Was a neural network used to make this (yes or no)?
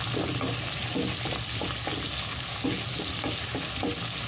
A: no